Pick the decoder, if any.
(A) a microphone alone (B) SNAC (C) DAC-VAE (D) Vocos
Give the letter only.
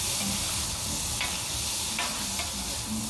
A